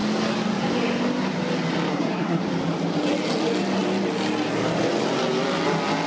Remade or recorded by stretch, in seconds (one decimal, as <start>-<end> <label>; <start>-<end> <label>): 0.0-1.9 recorded; 1.9-2.4 remade; 2.4-6.1 recorded